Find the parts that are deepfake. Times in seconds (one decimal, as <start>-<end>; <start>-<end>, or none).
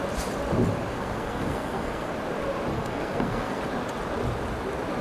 0.9-2.1; 2.7-3.6